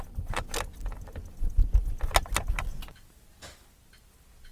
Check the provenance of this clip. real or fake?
real